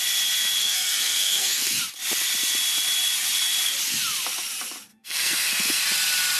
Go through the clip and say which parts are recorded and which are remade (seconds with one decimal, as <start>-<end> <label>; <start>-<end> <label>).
0.0-0.6 recorded; 0.6-1.8 remade; 1.8-4.9 recorded; 4.9-5.8 remade; 5.8-6.4 recorded